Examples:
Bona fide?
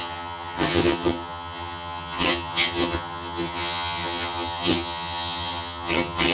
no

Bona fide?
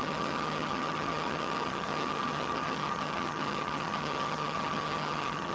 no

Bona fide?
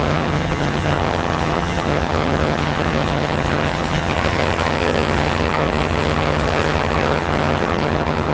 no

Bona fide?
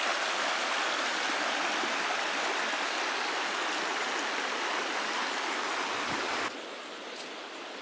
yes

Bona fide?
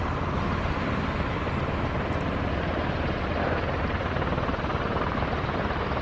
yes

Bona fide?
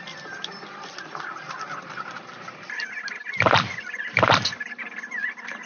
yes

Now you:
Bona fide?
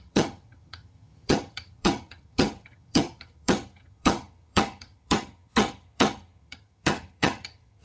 no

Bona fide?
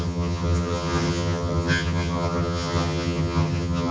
no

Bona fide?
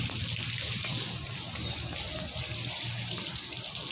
yes